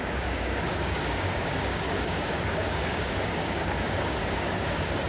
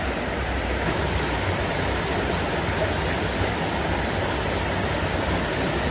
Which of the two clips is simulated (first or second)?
first